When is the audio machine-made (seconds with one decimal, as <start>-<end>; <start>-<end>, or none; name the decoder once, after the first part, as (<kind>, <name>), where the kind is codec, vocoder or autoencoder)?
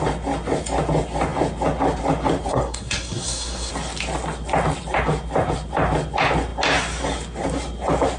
2.5-3.7 (codec, SNAC)